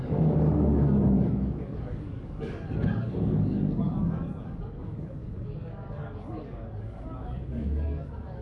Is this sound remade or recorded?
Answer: remade